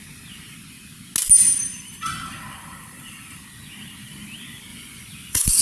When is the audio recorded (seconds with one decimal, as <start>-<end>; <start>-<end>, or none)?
0.0-4.7